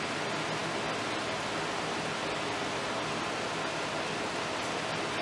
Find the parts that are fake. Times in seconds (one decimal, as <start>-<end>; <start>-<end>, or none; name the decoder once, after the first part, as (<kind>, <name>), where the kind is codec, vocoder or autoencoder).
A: none